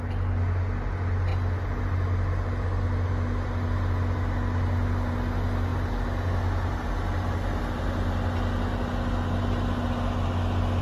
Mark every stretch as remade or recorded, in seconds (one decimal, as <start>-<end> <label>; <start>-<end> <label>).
0.0-10.8 recorded